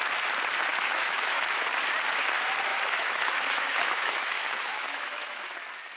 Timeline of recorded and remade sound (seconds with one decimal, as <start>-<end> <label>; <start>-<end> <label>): 0.0-0.7 recorded; 0.7-1.4 remade; 1.4-2.7 recorded; 2.7-5.6 remade; 5.6-6.0 recorded